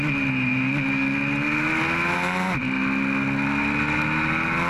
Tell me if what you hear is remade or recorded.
recorded